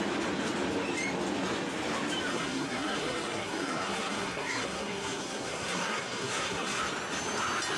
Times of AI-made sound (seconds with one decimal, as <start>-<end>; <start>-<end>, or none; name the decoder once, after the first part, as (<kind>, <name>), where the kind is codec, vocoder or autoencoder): 2.3-6.8 (codec, SNAC)